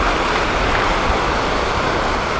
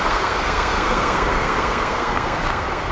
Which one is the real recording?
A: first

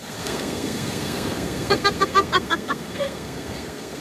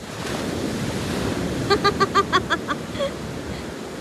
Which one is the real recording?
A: second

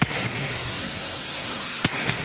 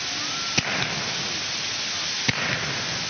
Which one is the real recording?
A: second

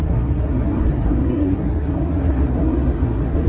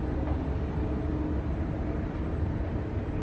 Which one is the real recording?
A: second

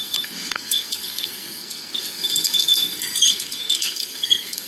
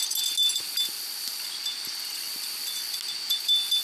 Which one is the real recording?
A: second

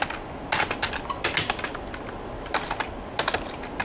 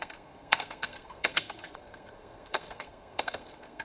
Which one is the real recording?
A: first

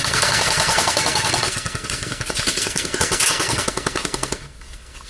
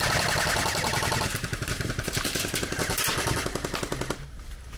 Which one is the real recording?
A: second